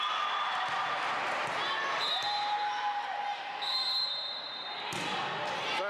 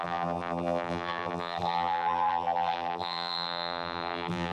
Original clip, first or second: first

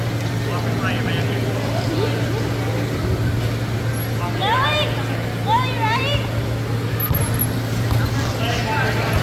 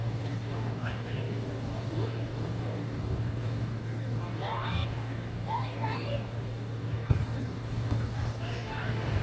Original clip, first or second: first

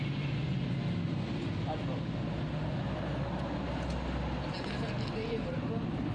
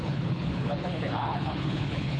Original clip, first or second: first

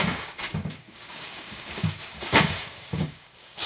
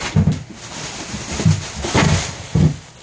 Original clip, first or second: second